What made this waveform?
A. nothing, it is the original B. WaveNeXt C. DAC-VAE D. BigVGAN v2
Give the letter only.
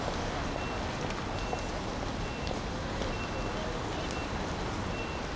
A